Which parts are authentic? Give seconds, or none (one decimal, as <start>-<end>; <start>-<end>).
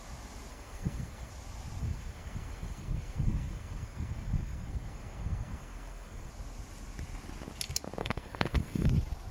0.0-0.5; 1.3-1.8; 6.3-8.0; 8.9-9.3